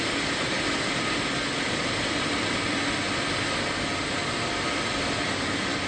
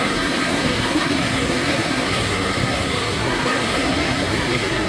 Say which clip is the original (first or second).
first